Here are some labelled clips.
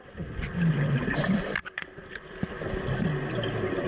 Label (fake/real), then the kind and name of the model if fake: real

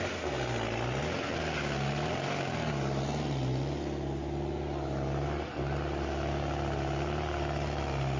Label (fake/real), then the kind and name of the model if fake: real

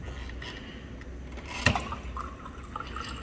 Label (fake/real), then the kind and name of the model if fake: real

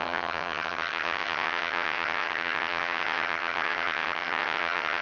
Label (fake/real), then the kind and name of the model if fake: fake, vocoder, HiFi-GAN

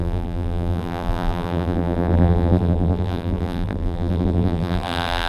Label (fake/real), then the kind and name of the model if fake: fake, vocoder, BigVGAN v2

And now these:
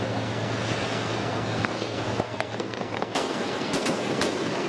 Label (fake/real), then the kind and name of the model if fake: fake, codec, SNAC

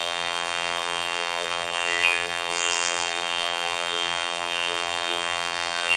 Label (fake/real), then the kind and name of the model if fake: fake, vocoder, BigVGAN v2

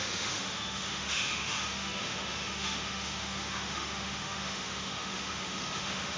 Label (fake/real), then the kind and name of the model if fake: fake, autoencoder, DAC-VAE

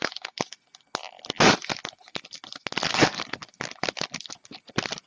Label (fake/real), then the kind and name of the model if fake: real